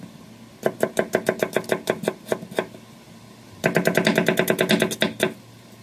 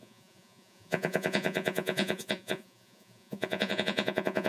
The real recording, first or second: first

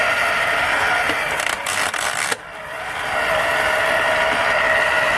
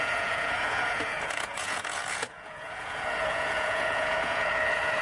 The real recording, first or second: first